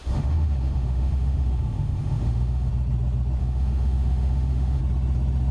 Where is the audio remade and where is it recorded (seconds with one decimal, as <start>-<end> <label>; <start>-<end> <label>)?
0.0-2.7 remade; 2.7-3.4 recorded; 3.4-4.8 remade; 4.8-5.5 recorded